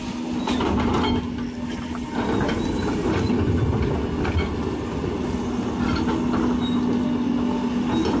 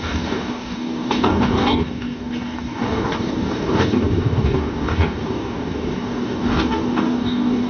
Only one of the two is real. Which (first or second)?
first